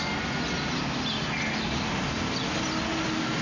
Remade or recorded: recorded